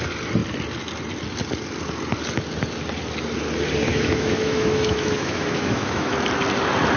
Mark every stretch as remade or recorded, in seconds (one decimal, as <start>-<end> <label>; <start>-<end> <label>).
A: 0.0-3.9 recorded; 3.9-6.1 remade; 6.1-7.0 recorded